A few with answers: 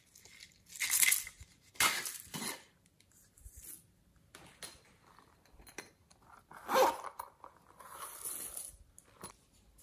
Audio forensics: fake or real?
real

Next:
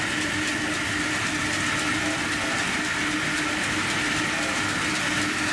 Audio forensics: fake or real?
real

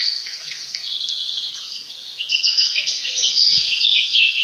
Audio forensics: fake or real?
fake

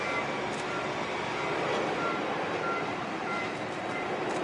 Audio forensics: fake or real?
real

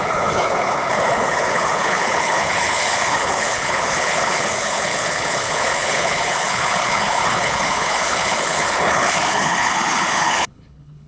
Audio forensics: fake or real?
fake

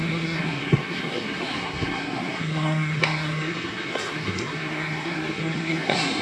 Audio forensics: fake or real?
fake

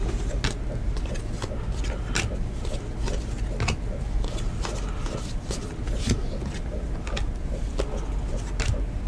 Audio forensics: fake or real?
real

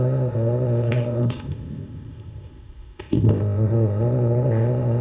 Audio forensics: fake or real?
fake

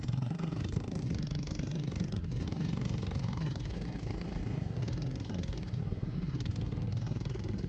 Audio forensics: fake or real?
fake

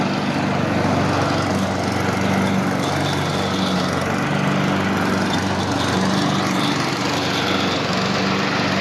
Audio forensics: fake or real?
real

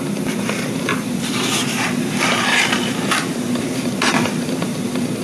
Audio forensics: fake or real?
fake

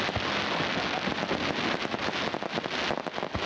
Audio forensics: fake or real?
real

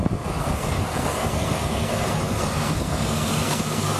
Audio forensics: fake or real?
fake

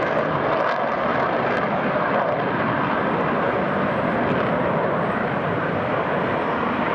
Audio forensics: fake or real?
fake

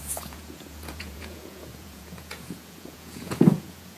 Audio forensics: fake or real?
fake